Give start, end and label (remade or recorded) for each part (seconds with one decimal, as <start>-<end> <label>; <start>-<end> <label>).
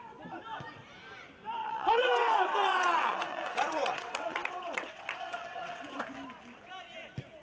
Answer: 0.0-1.6 recorded; 1.6-6.0 remade; 6.0-7.4 recorded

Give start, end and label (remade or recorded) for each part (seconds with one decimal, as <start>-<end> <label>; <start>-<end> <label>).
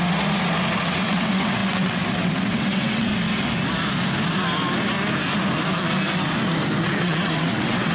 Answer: 0.0-0.8 recorded; 0.8-3.1 remade; 3.1-7.0 recorded; 7.0-7.9 remade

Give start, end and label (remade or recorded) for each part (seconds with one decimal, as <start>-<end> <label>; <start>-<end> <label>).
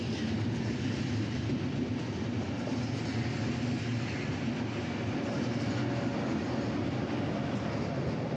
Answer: 0.0-8.4 recorded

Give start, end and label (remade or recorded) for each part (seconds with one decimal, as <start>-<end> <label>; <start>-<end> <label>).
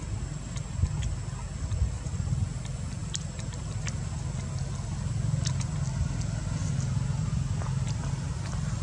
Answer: 0.0-8.8 recorded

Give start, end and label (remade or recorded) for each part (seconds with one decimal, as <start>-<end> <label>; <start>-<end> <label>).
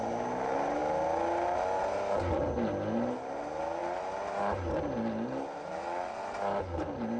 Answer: 0.0-7.2 recorded